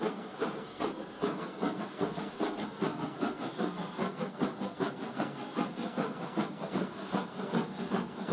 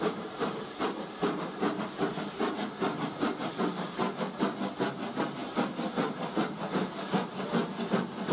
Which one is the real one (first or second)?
second